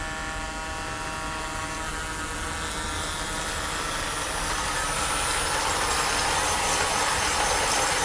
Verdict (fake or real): real